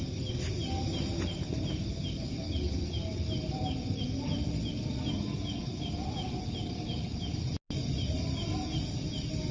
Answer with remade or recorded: recorded